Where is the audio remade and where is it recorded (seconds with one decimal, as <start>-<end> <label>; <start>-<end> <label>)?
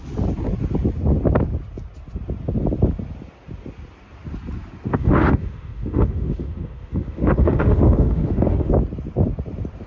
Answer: 0.0-4.9 recorded; 4.9-8.7 remade; 8.7-9.9 recorded